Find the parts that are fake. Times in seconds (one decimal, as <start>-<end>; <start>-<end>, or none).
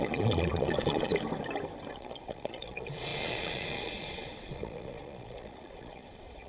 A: 0.0-1.1; 1.9-6.5